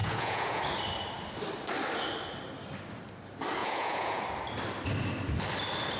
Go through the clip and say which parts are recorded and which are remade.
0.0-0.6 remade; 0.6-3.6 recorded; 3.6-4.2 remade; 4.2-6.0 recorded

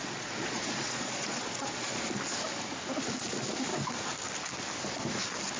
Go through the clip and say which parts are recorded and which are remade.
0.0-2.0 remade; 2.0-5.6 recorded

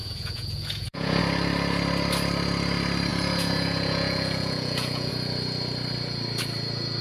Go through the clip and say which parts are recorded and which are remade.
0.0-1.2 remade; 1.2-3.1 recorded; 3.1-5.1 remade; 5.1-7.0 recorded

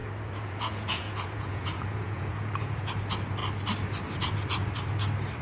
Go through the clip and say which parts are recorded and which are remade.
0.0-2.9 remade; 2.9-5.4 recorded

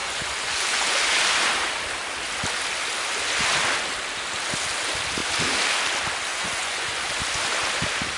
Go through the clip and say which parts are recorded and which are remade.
0.0-1.0 remade; 1.0-6.3 recorded; 6.3-7.0 remade; 7.0-8.2 recorded

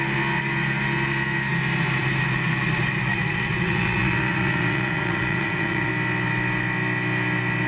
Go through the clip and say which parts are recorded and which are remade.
0.0-3.1 recorded; 3.1-5.9 remade; 5.9-7.7 recorded

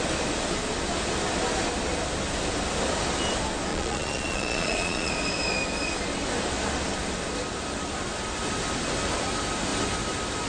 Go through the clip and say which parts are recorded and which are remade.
0.0-3.7 recorded; 3.7-5.1 remade; 5.1-10.5 recorded

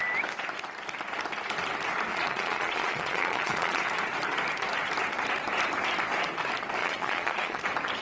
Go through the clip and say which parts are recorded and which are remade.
0.0-2.1 recorded; 2.1-3.8 remade; 3.8-6.8 recorded; 6.8-7.6 remade; 7.6-8.0 recorded